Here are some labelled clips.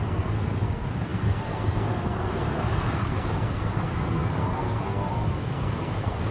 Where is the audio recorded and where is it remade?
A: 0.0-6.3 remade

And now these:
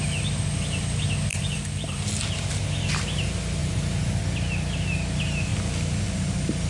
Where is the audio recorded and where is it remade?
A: 0.0-1.3 recorded; 1.3-2.2 remade; 2.2-3.6 recorded; 3.6-4.2 remade; 4.2-6.7 recorded

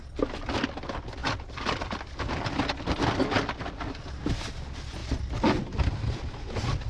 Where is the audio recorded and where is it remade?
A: 0.0-6.9 recorded

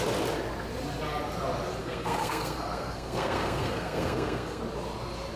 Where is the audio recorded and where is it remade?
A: 0.0-1.8 recorded; 1.8-4.6 remade; 4.6-5.4 recorded